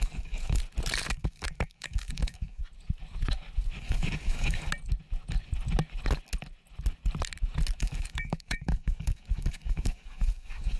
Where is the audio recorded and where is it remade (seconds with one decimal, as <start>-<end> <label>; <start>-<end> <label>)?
0.0-0.6 remade; 0.6-1.1 recorded; 1.1-2.6 remade; 2.6-3.8 recorded; 3.8-4.7 remade; 4.7-7.8 recorded; 7.8-10.8 remade